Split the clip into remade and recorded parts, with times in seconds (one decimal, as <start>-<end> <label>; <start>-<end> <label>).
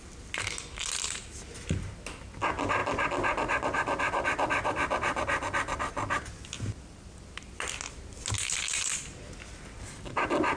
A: 0.0-10.6 recorded